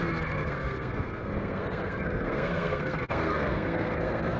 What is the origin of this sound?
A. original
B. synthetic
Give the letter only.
B